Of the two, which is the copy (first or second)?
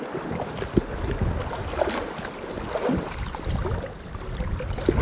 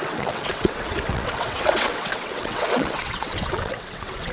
second